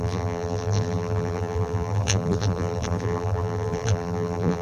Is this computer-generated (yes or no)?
yes